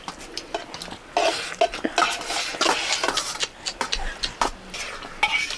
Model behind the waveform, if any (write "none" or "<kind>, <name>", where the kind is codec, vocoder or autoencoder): none